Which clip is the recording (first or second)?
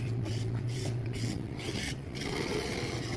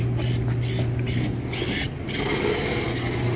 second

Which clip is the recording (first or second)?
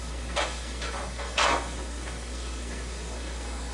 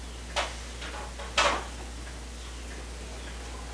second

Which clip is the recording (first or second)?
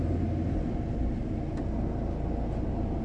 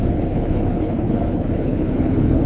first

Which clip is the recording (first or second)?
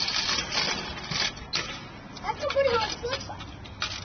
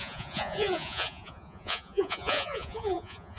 first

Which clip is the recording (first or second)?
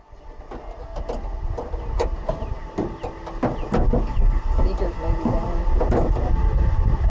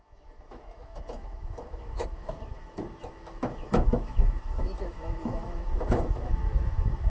first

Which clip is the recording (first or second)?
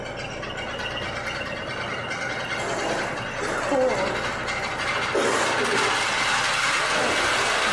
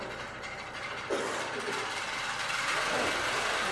first